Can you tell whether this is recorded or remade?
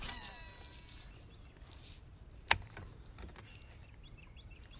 recorded